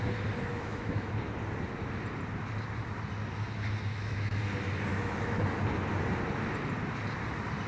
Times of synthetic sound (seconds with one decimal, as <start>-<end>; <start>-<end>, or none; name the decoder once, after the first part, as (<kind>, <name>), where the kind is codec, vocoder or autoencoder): 0.5-1.1 (autoencoder, DAC-VAE); 3.9-4.4; 4.9-5.4